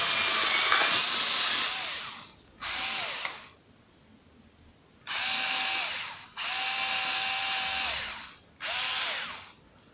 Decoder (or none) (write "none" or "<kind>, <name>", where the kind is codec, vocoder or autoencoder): none